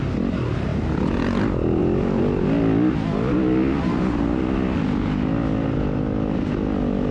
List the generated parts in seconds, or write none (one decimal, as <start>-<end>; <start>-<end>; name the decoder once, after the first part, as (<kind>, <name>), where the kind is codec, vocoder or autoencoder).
none